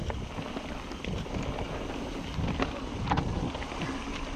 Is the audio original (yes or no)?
yes